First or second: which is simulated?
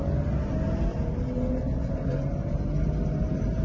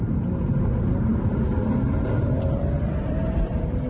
second